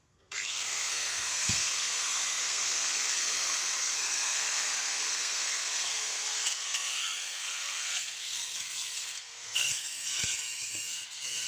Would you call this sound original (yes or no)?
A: no